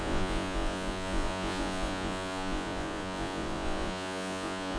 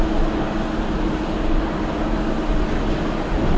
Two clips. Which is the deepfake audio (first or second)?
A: first